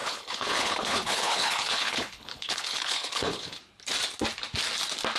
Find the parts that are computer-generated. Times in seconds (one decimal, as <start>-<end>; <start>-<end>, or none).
0.0-3.6